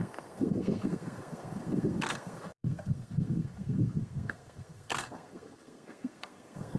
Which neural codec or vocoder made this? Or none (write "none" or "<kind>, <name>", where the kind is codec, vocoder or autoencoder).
codec, SNAC